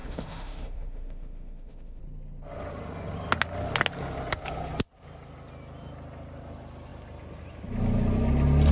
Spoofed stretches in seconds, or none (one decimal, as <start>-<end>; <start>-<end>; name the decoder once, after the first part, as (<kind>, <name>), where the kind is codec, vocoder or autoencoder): 0.0-2.0 (autoencoder, DAC-VAE)